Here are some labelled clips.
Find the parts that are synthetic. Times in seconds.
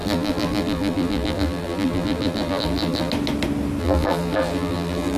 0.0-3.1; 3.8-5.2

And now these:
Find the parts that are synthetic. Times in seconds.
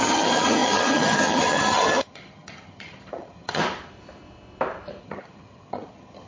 0.0-3.6; 5.0-6.3